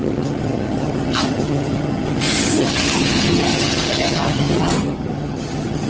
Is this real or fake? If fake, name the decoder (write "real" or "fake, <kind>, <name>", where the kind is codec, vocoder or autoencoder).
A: fake, vocoder, HiFi-GAN